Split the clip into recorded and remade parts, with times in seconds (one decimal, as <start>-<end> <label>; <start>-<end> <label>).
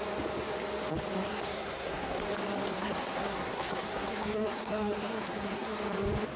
0.0-1.3 recorded; 1.3-2.2 remade; 2.2-2.7 recorded; 2.7-5.8 remade; 5.8-6.4 recorded